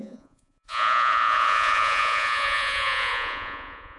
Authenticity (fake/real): fake